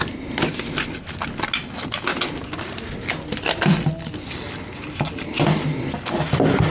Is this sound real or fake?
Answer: real